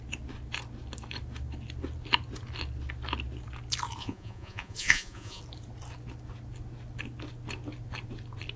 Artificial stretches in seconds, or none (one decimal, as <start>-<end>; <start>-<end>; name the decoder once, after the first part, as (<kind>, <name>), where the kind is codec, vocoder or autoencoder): 4.0-5.4 (vocoder, Vocos)